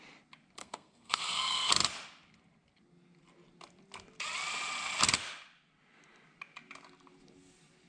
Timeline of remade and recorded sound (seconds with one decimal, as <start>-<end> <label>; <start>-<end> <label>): 0.0-0.6 recorded; 0.6-1.6 remade; 1.6-7.9 recorded